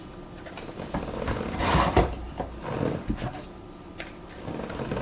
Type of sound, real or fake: real